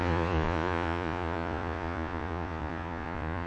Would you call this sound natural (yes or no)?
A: no